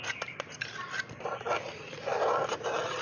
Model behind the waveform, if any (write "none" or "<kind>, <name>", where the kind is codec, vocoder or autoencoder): none